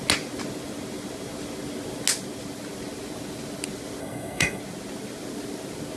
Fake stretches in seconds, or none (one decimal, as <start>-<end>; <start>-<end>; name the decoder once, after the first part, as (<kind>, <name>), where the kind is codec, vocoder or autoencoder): 4.0-4.6 (codec, SNAC)